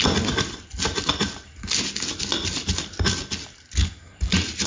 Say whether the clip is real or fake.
real